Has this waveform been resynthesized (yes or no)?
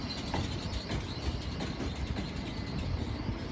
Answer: no